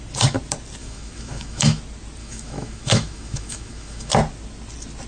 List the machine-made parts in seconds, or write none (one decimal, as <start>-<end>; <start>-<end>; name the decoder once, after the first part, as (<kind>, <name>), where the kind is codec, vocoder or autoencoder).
0.8-1.8 (autoencoder, DAC-VAE); 2.2-4.1